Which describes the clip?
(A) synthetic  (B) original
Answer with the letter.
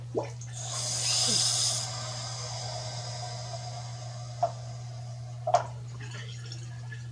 B